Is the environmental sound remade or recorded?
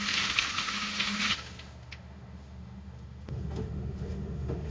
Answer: remade